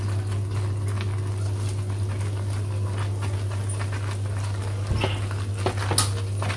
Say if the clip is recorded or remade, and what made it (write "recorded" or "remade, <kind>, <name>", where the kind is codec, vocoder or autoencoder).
recorded